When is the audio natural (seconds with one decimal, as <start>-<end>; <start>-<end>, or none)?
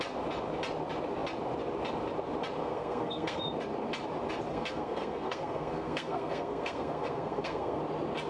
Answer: 0.0-2.6; 3.4-4.5; 7.8-8.3